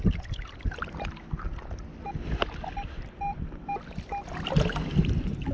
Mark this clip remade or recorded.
recorded